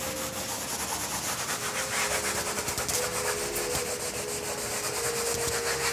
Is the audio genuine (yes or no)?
yes